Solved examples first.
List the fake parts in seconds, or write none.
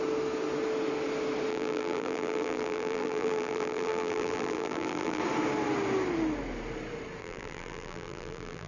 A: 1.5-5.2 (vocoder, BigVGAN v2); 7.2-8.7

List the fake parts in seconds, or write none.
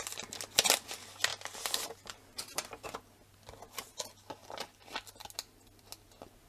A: 1.3-3.0 (vocoder, BigVGAN v2)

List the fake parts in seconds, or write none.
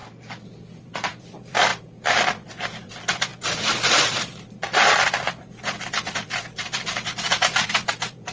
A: 0.8-8.3 (vocoder, BigVGAN v2)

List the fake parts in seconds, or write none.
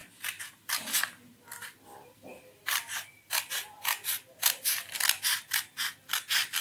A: 0.0-6.6 (vocoder, BigVGAN v2)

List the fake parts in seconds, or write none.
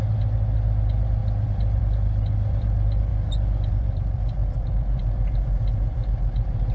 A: 0.0-3.1 (vocoder, BigVGAN v2); 3.7-6.7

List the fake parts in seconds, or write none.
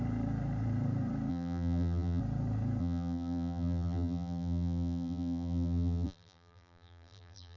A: 1.3-2.2 (vocoder, BigVGAN v2); 2.8-7.6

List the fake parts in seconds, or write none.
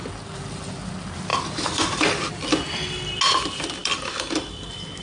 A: 1.3-2.3 (vocoder, BigVGAN v2); 3.8-4.5